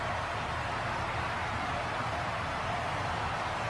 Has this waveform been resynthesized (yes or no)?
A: no